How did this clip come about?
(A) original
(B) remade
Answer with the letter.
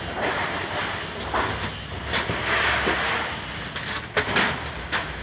A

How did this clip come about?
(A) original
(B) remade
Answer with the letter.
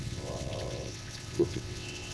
B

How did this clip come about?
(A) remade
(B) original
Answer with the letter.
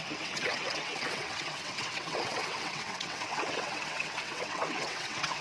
A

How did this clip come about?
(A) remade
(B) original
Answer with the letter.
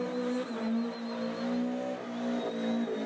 B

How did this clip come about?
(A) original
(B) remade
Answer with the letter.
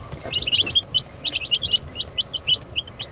A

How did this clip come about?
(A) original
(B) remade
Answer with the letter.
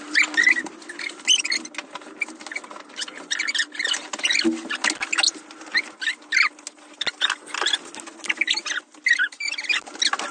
A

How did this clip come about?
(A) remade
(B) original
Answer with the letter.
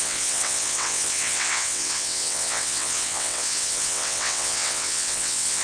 A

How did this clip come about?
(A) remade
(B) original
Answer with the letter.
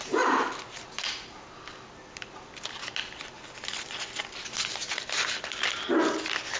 B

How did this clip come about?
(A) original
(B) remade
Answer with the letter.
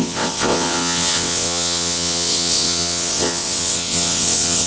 B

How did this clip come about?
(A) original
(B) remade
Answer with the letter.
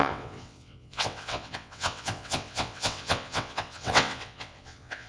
B